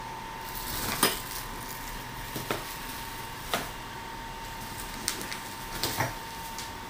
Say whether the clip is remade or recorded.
recorded